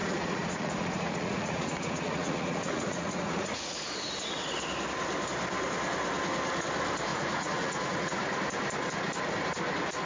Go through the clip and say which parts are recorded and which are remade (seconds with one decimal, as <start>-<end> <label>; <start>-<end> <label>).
0.0-3.9 remade; 3.9-7.1 recorded; 7.1-8.2 remade; 8.2-10.1 recorded

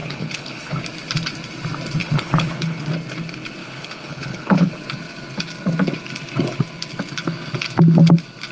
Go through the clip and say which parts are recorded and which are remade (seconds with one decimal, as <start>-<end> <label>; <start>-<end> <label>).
0.0-0.8 remade; 0.8-2.0 recorded; 2.0-2.9 remade; 2.9-3.6 recorded; 3.6-4.7 remade; 4.7-8.5 recorded